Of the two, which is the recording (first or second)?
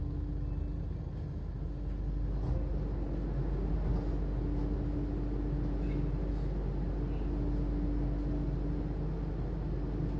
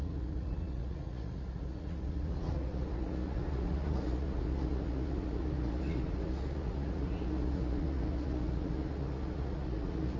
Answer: first